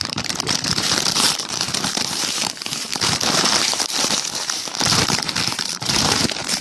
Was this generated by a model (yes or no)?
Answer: yes